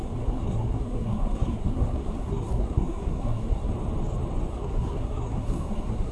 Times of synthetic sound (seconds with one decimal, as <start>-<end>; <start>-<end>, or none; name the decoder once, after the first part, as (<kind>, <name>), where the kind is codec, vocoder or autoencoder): 0.0-3.7 (codec, SNAC); 4.5-6.1